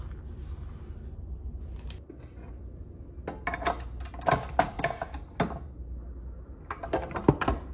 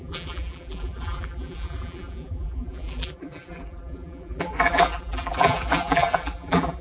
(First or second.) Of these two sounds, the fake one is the second